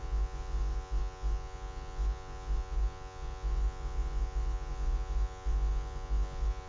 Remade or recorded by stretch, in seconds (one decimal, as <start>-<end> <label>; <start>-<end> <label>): 0.0-6.7 remade